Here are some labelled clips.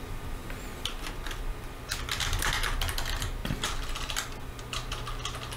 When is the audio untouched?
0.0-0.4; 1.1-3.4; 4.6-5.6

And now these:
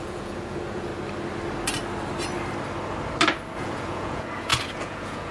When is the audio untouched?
0.9-3.5

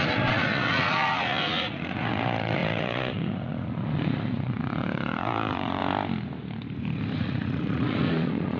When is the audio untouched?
5.8-7.2

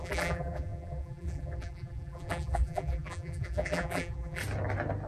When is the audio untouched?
4.4-5.1

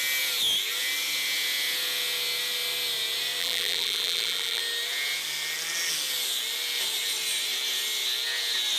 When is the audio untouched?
0.0-3.4; 4.6-8.8

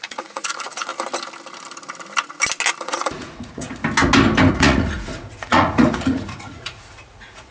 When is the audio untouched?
0.9-2.8; 3.8-4.5

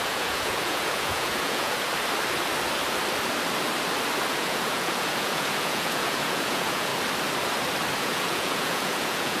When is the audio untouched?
1.9-4.3; 6.9-8.0

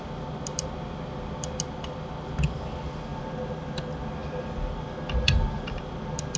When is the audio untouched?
0.0-3.1; 3.8-4.2